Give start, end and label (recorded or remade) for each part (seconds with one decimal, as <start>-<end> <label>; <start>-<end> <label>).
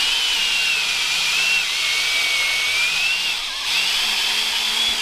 0.0-5.0 recorded